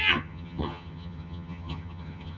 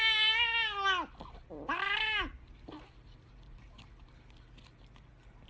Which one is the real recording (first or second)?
second